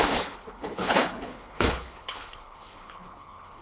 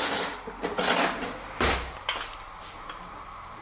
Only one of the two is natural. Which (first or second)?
second